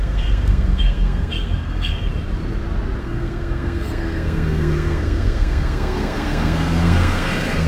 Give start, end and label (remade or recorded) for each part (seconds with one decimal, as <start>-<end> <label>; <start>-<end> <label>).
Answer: 0.0-2.1 remade; 2.1-3.0 recorded; 3.0-7.7 remade